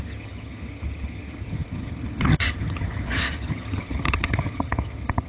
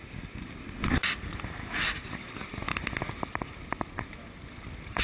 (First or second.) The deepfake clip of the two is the first